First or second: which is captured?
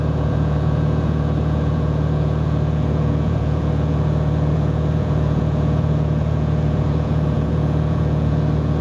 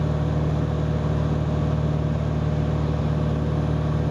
second